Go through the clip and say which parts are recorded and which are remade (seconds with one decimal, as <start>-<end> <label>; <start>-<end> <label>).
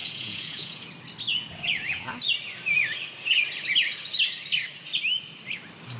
0.0-0.9 remade; 0.9-1.3 recorded; 1.3-2.2 remade; 2.2-6.0 recorded